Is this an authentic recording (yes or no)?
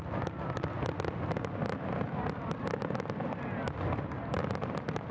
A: yes